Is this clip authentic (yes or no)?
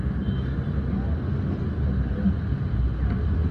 yes